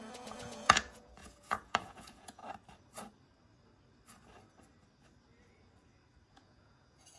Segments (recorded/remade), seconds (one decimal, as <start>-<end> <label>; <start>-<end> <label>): 0.0-2.4 remade; 2.4-6.3 recorded; 6.3-7.2 remade